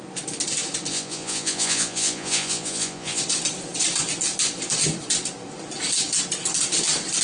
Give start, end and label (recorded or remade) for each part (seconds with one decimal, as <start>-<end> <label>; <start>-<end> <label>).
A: 0.0-0.9 recorded; 0.9-3.2 remade; 3.2-7.2 recorded